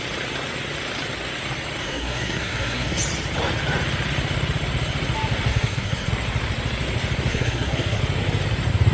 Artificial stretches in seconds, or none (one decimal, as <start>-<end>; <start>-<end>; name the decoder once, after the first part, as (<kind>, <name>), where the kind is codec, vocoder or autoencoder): 1.8-3.0 (codec, SNAC); 5.5-6.1; 7.3-8.0